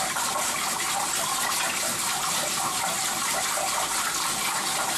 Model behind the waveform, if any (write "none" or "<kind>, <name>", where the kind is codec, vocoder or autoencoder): none